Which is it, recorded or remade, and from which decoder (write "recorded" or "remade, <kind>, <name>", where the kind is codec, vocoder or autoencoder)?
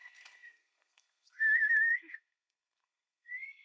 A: remade, codec, SNAC